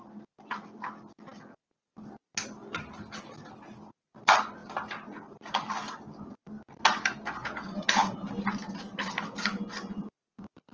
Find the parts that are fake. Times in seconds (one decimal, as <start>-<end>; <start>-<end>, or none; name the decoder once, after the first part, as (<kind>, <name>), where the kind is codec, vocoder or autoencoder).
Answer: 7.4-8.3 (vocoder, Vocos)